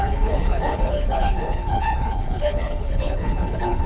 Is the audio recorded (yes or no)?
no